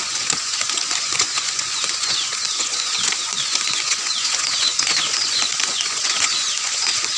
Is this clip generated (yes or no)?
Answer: yes